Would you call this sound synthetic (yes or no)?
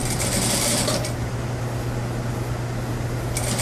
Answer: no